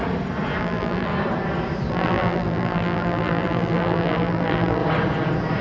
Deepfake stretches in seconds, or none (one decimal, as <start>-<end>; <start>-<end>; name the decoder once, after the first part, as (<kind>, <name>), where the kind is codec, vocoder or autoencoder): 0.6-1.1 (vocoder, BigVGAN v2); 1.9-4.8